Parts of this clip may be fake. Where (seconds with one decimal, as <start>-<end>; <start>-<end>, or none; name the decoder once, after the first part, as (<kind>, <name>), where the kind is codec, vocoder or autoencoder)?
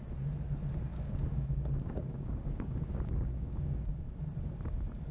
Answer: 0.9-4.0 (codec, DAC)